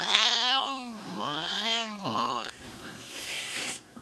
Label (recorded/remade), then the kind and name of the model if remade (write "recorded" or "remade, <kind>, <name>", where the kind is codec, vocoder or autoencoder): remade, codec, SNAC